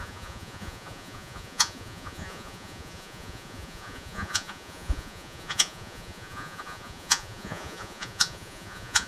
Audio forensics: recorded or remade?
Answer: remade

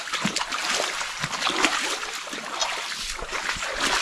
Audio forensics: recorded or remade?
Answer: recorded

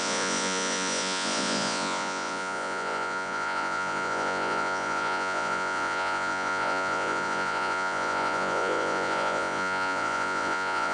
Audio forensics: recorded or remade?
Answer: remade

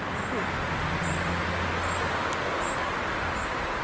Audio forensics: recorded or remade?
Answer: recorded